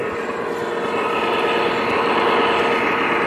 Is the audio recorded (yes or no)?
yes